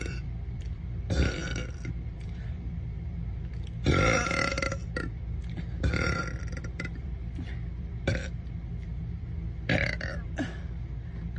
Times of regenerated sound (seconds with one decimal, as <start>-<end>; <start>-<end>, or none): 0.0-11.4